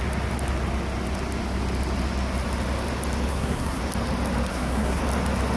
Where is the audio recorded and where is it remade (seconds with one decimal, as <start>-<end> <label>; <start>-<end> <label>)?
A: 0.0-3.3 recorded; 3.3-3.8 remade; 3.8-4.5 recorded; 4.5-5.0 remade; 5.0-5.6 recorded